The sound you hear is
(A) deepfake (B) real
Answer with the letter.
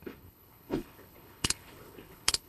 A